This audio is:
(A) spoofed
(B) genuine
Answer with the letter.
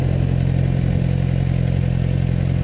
B